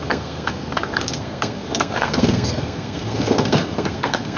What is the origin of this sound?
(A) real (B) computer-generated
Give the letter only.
B